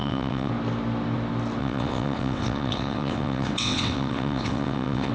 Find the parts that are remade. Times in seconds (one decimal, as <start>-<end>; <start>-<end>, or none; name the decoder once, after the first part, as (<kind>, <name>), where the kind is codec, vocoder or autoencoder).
0.0-0.5 (vocoder, WaveNeXt); 1.6-5.1